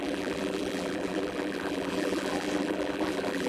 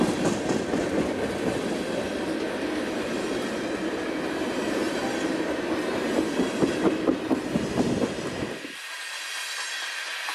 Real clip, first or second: second